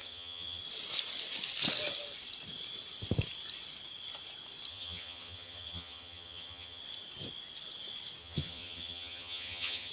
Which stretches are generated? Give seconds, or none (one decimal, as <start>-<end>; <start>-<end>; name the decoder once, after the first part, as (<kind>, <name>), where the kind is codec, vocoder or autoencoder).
0.0-0.6 (vocoder, HiFi-GAN); 4.7-6.8; 8.2-9.9